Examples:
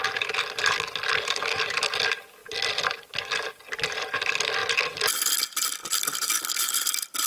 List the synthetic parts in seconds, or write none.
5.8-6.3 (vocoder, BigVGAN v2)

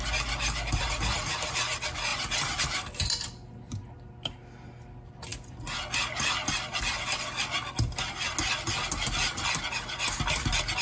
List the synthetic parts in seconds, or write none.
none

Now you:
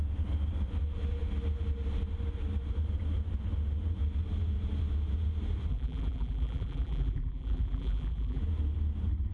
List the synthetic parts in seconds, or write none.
5.7-8.4 (vocoder, BigVGAN v2)

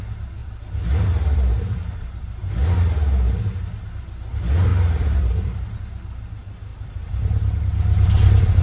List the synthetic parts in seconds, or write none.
0.4-2.5 (vocoder, BigVGAN v2); 4.7-5.8; 6.7-7.6

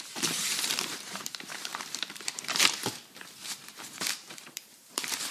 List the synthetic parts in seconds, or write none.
0.0-5.3 (vocoder, BigVGAN v2)

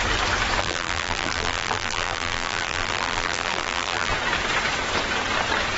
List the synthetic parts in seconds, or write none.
0.6-4.1 (vocoder, BigVGAN v2)